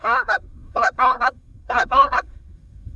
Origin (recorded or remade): remade